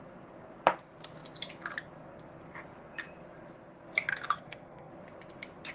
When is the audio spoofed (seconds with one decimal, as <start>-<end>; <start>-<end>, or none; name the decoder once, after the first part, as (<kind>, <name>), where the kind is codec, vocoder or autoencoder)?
4.1-4.9 (codec, SNAC)